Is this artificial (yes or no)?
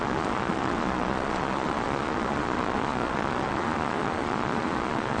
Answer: yes